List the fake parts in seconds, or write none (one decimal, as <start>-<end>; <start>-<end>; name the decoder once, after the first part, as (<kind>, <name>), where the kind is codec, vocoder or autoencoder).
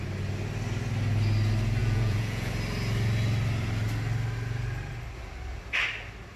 1.8-2.5 (vocoder, Vocos)